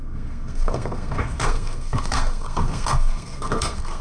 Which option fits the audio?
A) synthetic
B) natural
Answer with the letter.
A